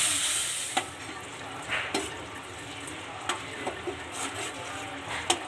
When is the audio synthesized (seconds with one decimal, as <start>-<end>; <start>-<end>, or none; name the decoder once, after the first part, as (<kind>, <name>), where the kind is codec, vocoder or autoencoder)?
none